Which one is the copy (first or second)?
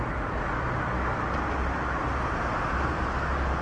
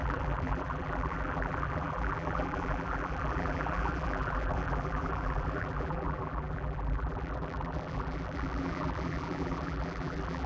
second